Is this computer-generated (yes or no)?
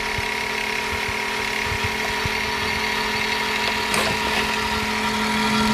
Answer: no